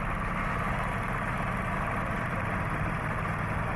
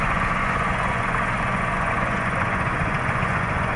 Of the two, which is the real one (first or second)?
first